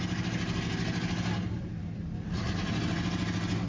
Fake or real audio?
real